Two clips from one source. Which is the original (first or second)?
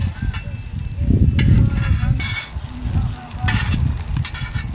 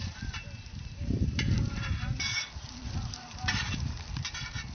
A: first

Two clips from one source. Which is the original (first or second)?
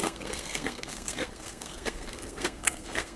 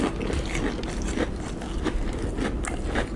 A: second